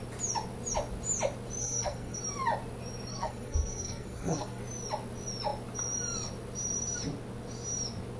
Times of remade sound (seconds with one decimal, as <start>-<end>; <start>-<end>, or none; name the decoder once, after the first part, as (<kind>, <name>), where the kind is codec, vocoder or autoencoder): 1.6-2.2 (codec, SNAC); 3.1-4.6